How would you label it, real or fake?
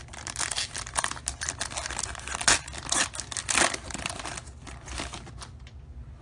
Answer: real